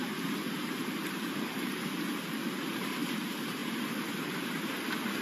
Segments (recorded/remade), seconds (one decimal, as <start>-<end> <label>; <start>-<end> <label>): 0.0-0.8 recorded; 0.8-3.2 remade; 3.2-5.2 recorded